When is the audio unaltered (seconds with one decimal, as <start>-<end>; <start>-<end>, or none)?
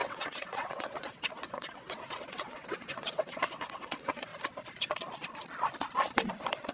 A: 4.3-6.7